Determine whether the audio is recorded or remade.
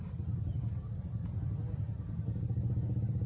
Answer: recorded